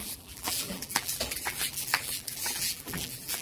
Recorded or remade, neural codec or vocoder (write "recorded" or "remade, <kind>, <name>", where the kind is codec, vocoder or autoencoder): remade, vocoder, BigVGAN v2